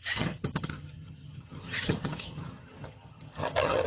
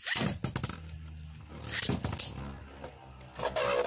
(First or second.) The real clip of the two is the second